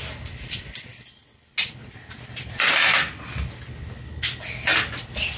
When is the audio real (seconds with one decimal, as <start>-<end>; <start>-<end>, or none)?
0.0-5.4